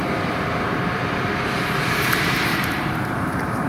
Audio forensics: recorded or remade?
remade